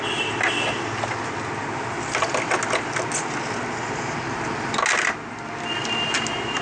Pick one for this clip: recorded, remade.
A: recorded